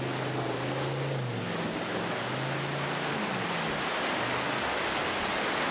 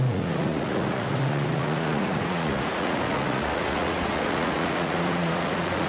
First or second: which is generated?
second